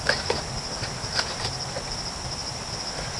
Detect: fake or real real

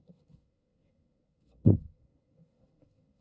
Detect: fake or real fake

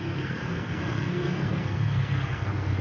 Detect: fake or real fake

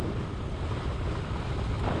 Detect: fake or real real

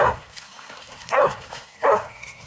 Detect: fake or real fake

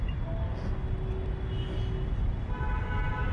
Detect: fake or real real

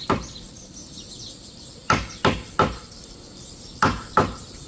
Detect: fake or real real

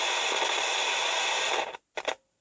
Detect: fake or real real